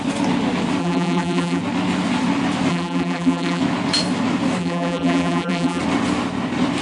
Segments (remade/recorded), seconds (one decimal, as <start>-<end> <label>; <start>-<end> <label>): 0.0-0.8 recorded; 0.8-1.6 remade; 1.6-2.7 recorded; 2.7-3.6 remade; 3.6-4.6 recorded; 4.6-5.8 remade; 5.8-6.8 recorded